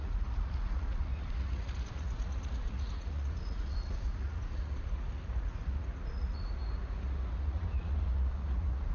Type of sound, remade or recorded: remade